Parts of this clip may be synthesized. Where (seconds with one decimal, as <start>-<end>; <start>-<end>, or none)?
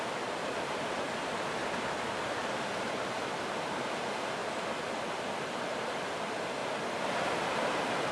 0.0-4.4; 5.1-6.6; 7.6-8.1